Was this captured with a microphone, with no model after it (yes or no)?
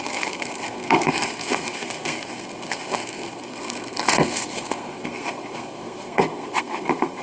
no